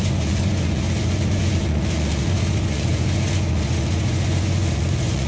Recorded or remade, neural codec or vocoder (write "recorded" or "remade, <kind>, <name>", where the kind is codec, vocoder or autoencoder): remade, vocoder, Vocos